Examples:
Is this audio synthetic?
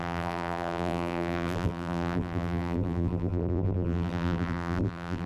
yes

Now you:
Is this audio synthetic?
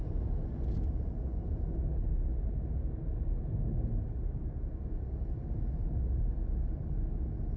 no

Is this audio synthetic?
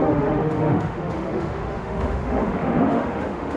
yes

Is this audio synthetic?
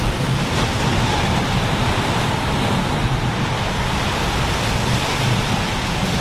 no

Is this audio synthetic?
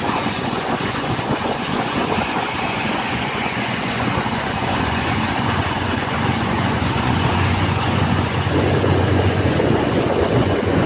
yes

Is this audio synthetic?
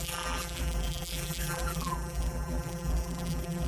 yes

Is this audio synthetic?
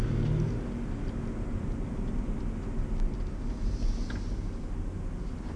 no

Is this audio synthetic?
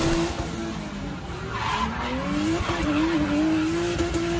no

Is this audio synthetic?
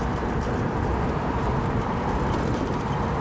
no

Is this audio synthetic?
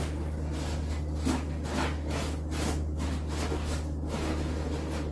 no